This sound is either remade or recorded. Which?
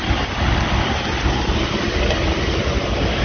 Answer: recorded